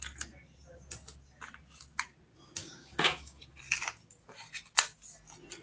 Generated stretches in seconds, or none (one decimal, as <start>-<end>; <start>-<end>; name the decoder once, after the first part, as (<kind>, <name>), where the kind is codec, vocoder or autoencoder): 2.6-3.4 (codec, DAC)